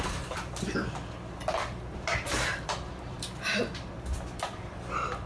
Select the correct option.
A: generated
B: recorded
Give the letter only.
A